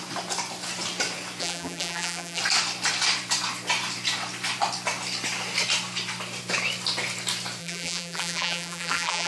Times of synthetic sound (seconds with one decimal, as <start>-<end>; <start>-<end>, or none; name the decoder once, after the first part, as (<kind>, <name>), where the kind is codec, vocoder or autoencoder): 1.4-2.4 (vocoder, BigVGAN v2); 7.6-9.3